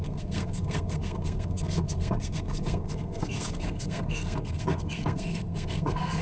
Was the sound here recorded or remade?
remade